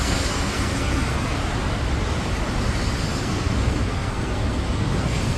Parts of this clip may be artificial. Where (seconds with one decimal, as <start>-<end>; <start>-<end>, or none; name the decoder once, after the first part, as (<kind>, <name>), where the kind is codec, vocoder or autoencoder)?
0.0-1.4 (codec, SNAC); 3.2-5.4